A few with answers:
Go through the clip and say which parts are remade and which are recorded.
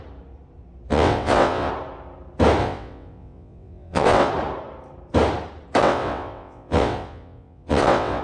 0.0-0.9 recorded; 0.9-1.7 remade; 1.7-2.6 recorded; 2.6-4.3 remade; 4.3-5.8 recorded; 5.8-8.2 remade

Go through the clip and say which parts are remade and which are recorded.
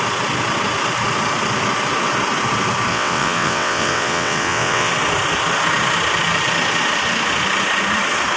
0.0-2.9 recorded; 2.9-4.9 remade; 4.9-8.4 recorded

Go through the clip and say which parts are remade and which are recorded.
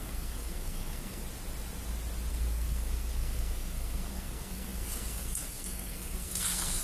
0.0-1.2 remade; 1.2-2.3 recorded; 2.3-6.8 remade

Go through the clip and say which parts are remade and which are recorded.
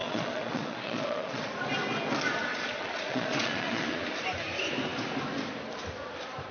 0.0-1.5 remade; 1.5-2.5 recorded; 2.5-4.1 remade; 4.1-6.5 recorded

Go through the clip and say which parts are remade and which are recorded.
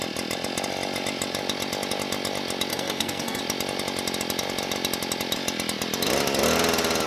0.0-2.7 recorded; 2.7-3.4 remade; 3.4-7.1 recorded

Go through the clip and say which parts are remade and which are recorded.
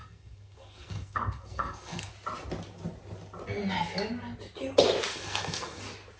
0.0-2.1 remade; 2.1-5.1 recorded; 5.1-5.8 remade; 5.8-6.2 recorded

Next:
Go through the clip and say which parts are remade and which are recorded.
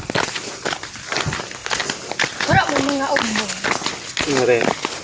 0.0-5.0 recorded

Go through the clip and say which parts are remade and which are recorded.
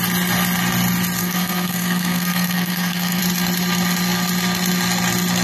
0.0-1.2 recorded; 1.2-3.2 remade; 3.2-5.4 recorded